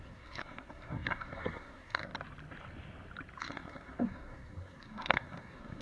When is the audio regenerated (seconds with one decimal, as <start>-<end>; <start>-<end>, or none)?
0.0-2.1; 3.4-5.8